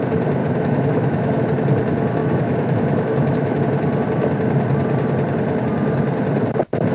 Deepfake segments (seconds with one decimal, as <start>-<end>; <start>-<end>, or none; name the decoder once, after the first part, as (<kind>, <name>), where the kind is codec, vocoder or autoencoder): 0.4-1.4 (autoencoder, DAC-VAE); 2.2-3.6